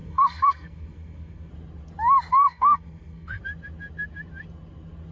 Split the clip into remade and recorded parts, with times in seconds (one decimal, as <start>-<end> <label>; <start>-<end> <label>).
0.0-1.5 remade; 1.5-2.3 recorded; 2.3-3.4 remade; 3.4-5.1 recorded